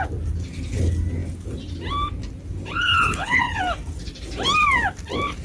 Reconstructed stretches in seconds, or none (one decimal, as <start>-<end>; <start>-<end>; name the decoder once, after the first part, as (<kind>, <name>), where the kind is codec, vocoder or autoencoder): 2.6-3.6 (codec, HILCodec)